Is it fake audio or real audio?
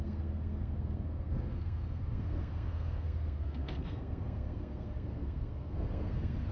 fake